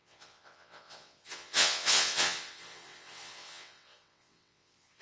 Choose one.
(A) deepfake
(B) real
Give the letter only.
A